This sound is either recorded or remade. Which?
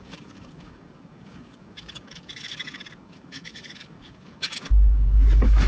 remade